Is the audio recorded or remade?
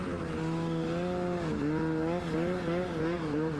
recorded